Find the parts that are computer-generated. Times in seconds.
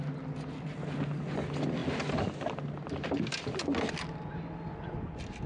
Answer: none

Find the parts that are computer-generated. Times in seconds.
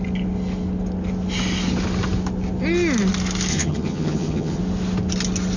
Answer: 3.5-4.6 (vocoder, HiFi-GAN)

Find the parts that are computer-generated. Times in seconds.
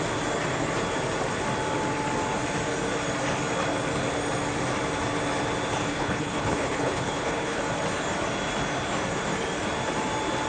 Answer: 5.9-7.6 (codec, HILCodec)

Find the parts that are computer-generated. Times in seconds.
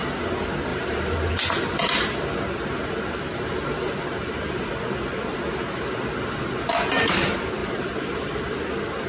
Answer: 0.7-1.3 (vocoder, BigVGAN v2); 3.3-4.7; 7.6-8.6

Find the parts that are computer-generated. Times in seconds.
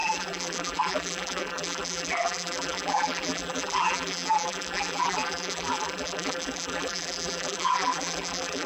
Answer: 0.0-8.7 (vocoder, BigVGAN v2)